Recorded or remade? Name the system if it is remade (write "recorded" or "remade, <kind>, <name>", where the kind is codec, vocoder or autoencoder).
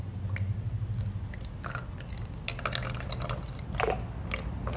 recorded